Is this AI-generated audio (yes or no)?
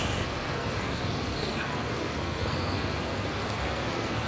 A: yes